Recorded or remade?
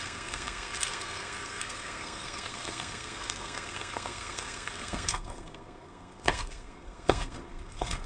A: remade